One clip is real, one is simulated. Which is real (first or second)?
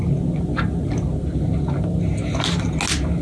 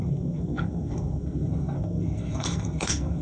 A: first